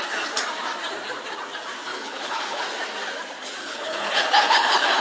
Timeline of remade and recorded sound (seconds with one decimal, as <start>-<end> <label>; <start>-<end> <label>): 0.0-1.9 recorded; 1.9-2.6 remade; 2.6-3.6 recorded; 3.6-5.0 remade

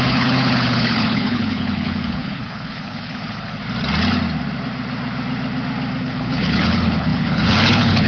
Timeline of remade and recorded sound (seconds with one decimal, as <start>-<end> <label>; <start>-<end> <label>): 0.0-3.6 remade; 3.6-6.0 recorded; 6.0-8.1 remade

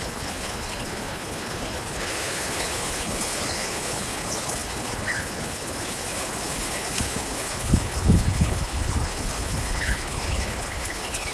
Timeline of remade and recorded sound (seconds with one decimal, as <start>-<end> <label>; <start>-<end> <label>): 0.0-11.3 remade

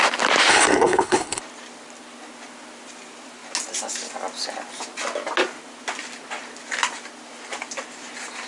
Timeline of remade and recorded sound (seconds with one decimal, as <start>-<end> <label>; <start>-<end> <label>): 0.0-0.5 recorded; 0.5-1.4 remade; 1.4-8.5 recorded

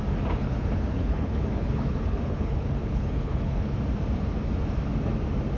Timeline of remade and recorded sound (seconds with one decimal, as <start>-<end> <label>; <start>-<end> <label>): 0.0-0.4 recorded; 0.4-3.8 remade; 3.8-5.6 recorded

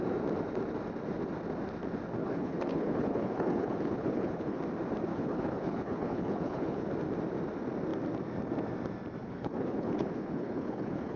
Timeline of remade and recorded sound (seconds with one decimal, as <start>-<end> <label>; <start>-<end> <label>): 0.0-2.2 recorded; 2.2-4.6 remade; 4.6-5.1 recorded; 5.1-6.9 remade; 6.9-9.2 recorded; 9.2-11.2 remade

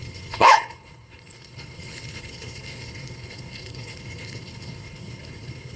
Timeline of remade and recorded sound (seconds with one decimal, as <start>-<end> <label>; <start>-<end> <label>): 0.0-5.8 remade